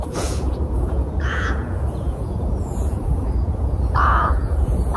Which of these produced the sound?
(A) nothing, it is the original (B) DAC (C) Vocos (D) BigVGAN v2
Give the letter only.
C